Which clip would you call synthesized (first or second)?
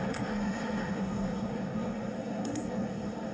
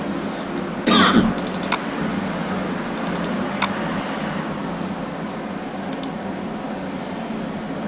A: first